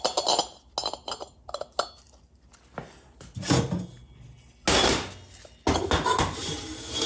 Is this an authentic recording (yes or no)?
yes